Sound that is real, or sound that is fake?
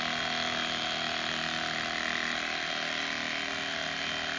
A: real